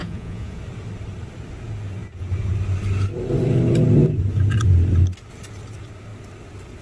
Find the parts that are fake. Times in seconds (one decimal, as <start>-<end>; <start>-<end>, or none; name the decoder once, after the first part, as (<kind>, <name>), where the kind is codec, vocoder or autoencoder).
0.0-0.6 (vocoder, Vocos)